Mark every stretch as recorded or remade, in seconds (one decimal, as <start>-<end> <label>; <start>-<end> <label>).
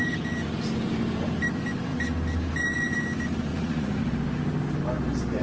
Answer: 0.0-3.5 recorded; 3.5-4.0 remade; 4.0-5.4 recorded